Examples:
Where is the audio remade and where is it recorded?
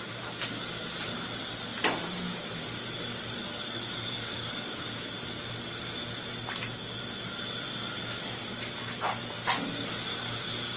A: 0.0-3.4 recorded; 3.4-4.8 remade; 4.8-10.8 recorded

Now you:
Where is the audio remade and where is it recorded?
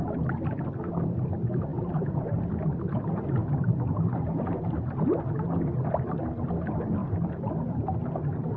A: 0.0-1.7 recorded; 1.7-3.0 remade; 3.0-3.4 recorded; 3.4-5.2 remade; 5.2-7.0 recorded; 7.0-7.5 remade; 7.5-8.6 recorded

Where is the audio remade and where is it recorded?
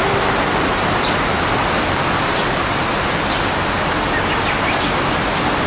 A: 0.0-3.4 remade; 3.4-5.7 recorded